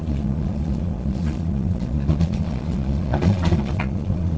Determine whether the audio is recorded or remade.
remade